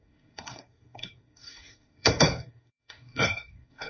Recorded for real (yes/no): no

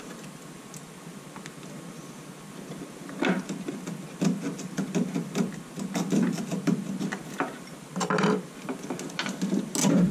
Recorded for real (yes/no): yes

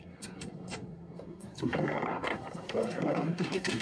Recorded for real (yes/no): no